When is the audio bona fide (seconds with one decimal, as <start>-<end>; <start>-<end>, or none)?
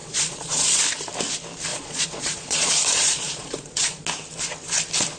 0.8-1.7; 4.0-5.2